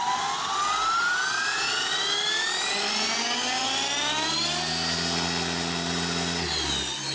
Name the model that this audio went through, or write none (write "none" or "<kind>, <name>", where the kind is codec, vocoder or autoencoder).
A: none